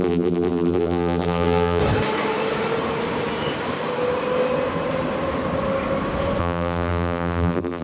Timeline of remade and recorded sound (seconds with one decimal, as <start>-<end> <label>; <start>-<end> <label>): 0.0-1.8 remade; 1.8-6.4 recorded; 6.4-7.8 remade